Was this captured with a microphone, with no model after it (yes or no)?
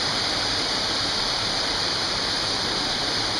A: no